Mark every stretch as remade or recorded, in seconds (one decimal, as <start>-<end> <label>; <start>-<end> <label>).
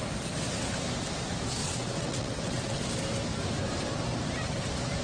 0.0-1.6 recorded; 1.6-2.8 remade; 2.8-5.0 recorded